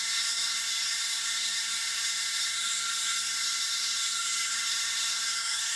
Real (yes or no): no